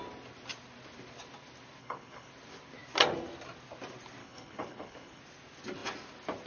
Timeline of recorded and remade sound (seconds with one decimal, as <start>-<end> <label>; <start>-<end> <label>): 0.0-1.8 recorded; 1.8-2.3 remade; 2.3-4.2 recorded; 4.2-5.2 remade; 5.2-6.5 recorded